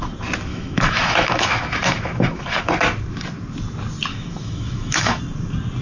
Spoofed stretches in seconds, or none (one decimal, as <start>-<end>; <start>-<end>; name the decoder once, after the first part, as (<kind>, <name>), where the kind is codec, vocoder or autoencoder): 0.5-2.7 (autoencoder, DAC-VAE); 4.1-5.2